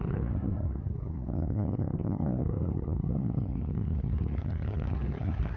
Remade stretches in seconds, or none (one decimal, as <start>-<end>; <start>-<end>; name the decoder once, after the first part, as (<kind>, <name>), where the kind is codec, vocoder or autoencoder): 0.0-5.6 (codec, SNAC)